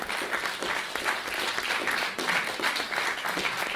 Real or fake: real